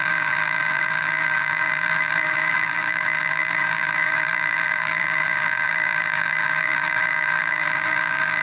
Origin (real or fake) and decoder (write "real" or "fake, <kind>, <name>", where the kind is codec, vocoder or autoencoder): fake, vocoder, BigVGAN v2